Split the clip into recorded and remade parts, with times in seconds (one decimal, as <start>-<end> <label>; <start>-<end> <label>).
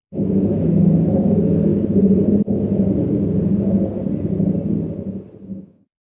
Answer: 0.0-1.7 remade; 1.7-5.4 recorded; 5.4-6.1 remade